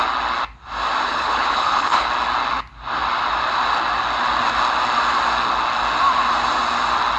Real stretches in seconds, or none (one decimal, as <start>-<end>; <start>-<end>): 0.0-1.0; 2.1-7.2